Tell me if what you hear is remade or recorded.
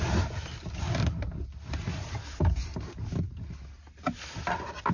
recorded